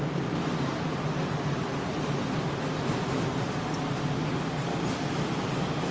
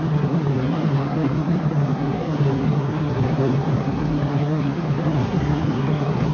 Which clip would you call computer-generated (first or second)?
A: second